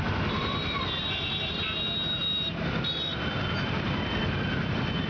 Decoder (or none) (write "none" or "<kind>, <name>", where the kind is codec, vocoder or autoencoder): none